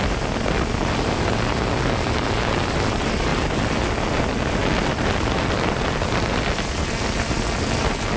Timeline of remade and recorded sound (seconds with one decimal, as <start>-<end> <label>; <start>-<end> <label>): 0.0-8.2 recorded